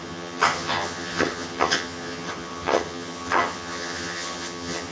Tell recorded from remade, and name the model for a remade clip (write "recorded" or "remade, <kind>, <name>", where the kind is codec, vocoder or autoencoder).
remade, vocoder, HiFi-GAN